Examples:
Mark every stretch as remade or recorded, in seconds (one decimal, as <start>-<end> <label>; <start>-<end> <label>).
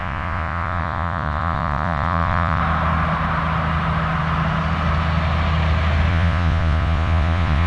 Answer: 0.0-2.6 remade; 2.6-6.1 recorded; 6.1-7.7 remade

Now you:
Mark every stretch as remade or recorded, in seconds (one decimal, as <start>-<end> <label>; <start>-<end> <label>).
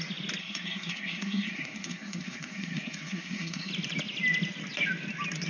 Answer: 0.0-0.4 recorded; 0.4-3.7 remade; 3.7-5.5 recorded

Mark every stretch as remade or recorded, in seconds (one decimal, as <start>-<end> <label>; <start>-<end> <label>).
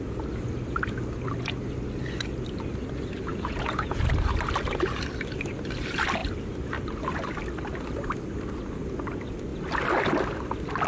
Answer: 0.0-3.3 recorded; 3.3-4.0 remade; 4.0-10.9 recorded